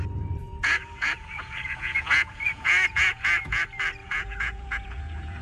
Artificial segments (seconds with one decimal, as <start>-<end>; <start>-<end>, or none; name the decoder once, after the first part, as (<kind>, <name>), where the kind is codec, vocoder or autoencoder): 0.4-3.6 (vocoder, Vocos); 4.0-5.4